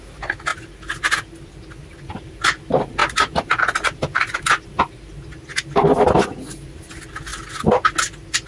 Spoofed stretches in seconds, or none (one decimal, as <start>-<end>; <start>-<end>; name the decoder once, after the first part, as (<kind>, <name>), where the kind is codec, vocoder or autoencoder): none